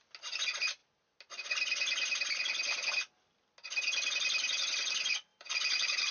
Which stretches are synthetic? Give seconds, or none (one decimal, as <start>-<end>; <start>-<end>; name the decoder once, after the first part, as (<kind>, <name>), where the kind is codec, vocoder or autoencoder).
5.3-6.1 (vocoder, BigVGAN v2)